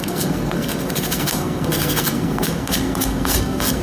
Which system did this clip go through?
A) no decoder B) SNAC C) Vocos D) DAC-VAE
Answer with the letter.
B